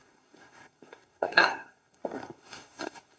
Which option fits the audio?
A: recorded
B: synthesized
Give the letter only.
B